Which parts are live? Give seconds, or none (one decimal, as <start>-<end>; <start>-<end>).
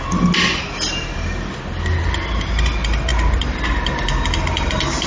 0.0-5.1